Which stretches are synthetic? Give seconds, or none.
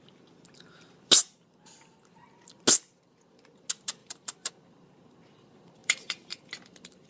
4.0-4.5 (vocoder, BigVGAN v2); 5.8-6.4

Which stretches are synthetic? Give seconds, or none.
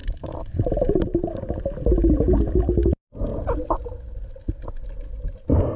0.0-2.6 (vocoder, BigVGAN v2); 3.3-3.8